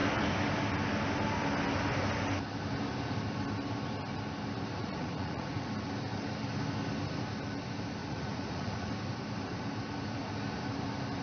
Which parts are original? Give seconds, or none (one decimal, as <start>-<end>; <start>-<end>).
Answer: 0.0-4.8; 5.7-8.0; 8.9-11.2